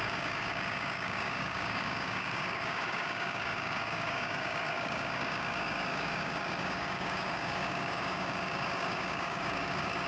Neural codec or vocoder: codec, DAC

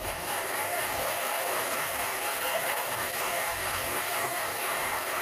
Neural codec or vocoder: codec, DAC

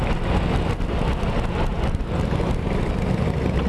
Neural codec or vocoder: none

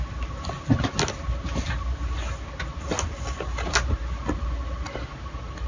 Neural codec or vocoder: none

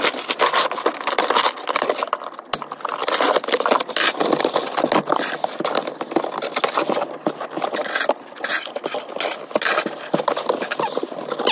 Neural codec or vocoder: none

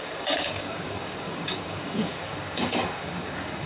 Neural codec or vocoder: codec, DAC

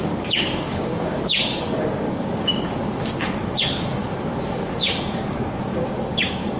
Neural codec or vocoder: codec, DAC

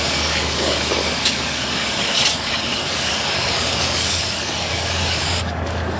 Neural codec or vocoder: codec, DAC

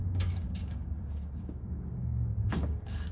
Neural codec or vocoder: codec, DAC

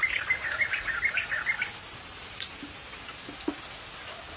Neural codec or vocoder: none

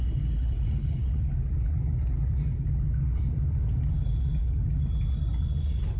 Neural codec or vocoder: none